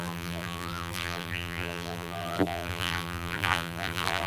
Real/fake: fake